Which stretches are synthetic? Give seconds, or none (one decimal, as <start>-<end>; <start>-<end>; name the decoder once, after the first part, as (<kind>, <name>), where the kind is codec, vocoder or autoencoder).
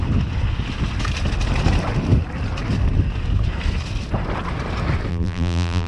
5.1-5.9 (vocoder, BigVGAN v2)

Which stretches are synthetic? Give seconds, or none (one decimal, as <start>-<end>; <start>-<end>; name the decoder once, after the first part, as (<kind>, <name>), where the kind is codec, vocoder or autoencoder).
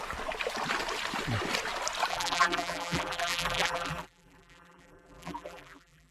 2.1-6.1 (vocoder, BigVGAN v2)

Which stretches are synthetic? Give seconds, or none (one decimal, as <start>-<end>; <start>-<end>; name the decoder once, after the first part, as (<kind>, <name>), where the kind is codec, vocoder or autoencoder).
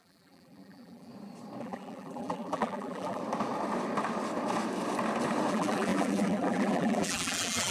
0.0-1.1 (vocoder, BigVGAN v2); 1.6-3.2; 5.5-7.7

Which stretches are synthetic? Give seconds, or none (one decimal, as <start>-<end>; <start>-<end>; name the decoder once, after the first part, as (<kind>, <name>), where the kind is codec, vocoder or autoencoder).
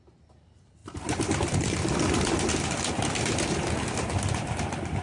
none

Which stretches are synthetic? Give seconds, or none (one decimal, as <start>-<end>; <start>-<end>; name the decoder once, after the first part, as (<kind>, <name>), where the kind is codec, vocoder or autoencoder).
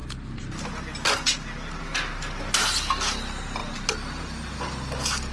3.6-4.2 (vocoder, BigVGAN v2)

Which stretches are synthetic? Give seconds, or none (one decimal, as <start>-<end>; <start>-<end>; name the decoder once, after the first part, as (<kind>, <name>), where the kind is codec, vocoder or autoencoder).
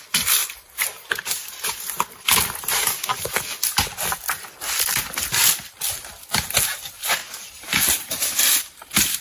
0.4-3.3 (vocoder, BigVGAN v2); 7.2-9.2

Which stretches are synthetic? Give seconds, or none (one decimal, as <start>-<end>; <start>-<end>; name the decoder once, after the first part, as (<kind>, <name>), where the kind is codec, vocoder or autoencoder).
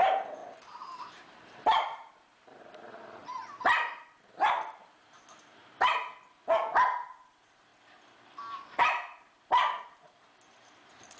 0.0-3.2 (vocoder, BigVGAN v2); 4.8-6.0; 7.3-7.7; 9.8-11.2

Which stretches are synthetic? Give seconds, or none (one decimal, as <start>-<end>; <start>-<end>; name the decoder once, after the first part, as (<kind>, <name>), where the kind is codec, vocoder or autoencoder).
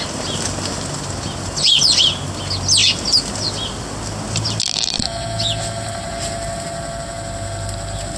none